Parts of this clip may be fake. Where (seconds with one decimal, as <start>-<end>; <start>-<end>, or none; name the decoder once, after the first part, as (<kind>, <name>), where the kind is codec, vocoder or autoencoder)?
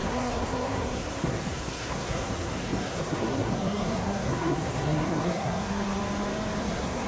0.0-6.0 (codec, SNAC); 6.6-7.1